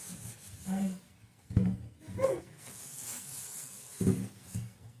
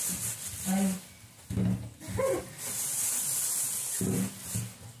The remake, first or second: first